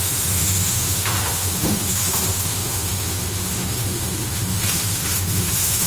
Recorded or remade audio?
remade